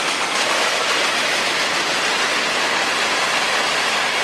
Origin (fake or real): real